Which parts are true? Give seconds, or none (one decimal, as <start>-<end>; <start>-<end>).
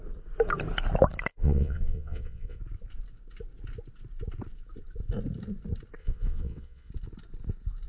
0.0-1.3; 2.6-6.0; 6.9-7.9